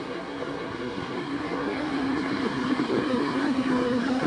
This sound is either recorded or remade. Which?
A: remade